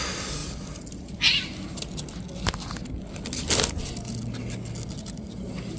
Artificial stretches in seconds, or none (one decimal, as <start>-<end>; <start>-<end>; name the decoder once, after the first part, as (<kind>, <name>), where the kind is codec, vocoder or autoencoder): none